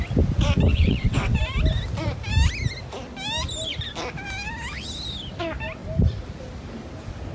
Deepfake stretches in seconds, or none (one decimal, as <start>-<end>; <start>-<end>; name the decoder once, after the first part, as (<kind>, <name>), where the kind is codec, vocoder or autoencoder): 0.7-1.4 (vocoder, WaveNeXt)